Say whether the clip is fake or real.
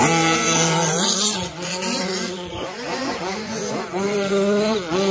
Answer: fake